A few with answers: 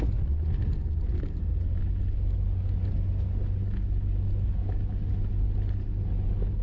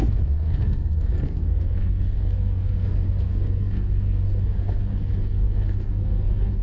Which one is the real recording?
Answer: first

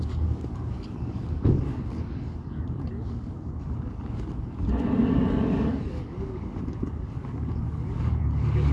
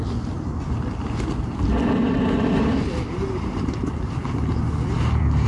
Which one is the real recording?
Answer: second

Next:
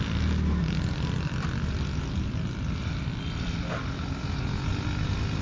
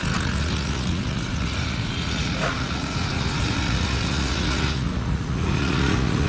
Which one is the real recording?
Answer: first